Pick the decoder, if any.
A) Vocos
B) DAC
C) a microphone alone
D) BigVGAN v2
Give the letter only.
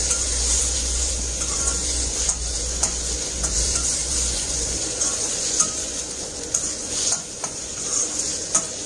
A